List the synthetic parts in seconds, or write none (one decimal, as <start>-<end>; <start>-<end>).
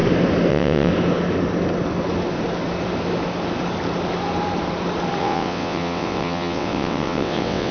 0.5-0.9; 5.2-7.7